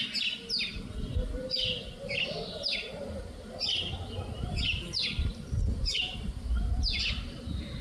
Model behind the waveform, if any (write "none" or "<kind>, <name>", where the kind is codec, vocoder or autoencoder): none